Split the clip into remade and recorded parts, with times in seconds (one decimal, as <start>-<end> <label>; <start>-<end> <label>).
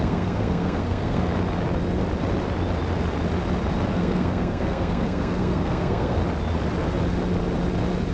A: 0.0-1.3 remade; 1.3-3.9 recorded; 3.9-6.2 remade; 6.2-8.1 recorded